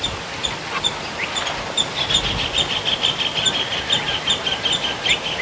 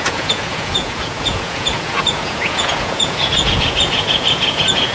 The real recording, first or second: first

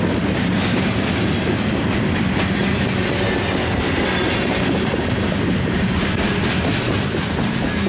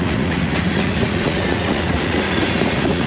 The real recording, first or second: first